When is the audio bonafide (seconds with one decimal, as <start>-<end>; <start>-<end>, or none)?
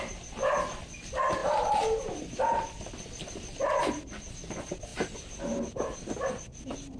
0.0-7.0